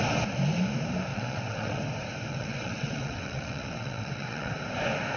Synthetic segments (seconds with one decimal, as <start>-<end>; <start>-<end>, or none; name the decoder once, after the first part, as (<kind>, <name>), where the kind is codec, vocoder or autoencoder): 1.1-1.8 (vocoder, WaveNeXt); 2.3-4.5